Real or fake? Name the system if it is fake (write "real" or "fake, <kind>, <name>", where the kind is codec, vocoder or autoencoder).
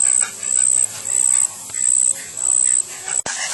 real